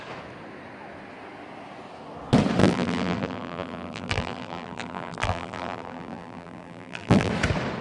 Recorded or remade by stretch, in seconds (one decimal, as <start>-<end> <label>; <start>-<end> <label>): 0.0-2.6 recorded; 2.6-7.3 remade; 7.3-7.8 recorded